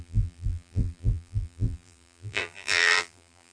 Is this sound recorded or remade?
remade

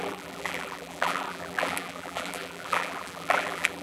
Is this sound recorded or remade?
remade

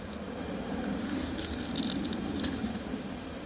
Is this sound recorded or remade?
recorded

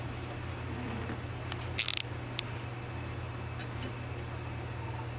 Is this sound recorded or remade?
recorded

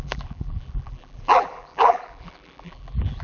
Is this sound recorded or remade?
remade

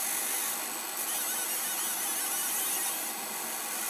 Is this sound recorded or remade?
recorded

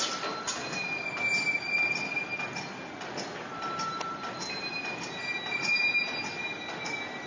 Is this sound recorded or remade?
recorded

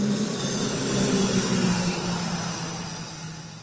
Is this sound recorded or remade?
recorded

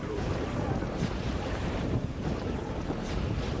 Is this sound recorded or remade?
remade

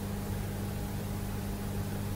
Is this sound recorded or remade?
recorded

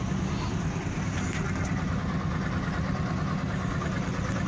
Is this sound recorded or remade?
recorded